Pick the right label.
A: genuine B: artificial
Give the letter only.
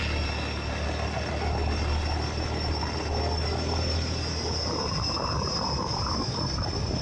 A